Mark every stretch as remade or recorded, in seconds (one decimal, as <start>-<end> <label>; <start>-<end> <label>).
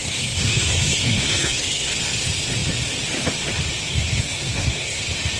0.0-1.9 remade; 1.9-3.9 recorded; 3.9-5.0 remade; 5.0-5.4 recorded